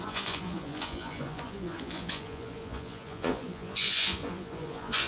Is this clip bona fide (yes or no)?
no